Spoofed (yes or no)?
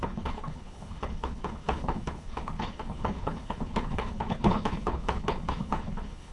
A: yes